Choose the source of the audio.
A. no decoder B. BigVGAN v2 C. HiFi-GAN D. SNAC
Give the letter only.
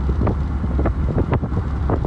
B